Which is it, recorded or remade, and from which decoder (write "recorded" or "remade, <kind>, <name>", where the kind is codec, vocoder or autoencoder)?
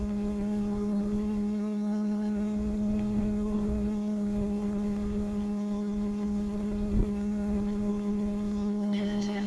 remade, codec, SNAC